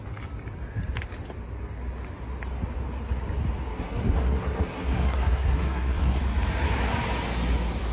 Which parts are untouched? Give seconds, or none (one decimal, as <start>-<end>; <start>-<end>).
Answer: 0.0-3.7; 6.2-7.9